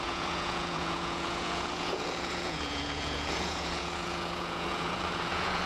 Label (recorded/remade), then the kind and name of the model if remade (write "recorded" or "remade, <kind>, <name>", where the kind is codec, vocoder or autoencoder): remade, vocoder, Vocos